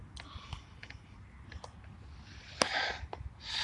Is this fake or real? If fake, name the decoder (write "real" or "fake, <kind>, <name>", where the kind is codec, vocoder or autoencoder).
real